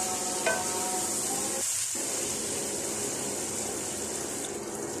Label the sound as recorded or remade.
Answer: recorded